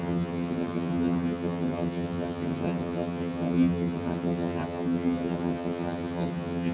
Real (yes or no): no